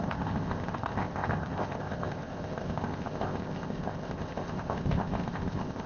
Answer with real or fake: fake